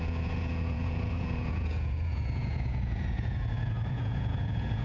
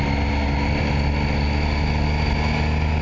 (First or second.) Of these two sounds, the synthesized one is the first